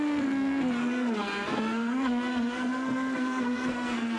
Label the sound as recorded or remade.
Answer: remade